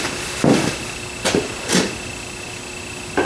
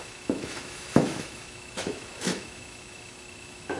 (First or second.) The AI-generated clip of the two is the second